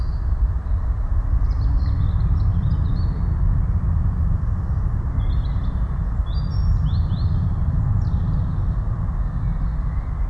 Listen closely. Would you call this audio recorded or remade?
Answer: recorded